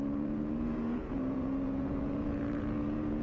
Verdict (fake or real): fake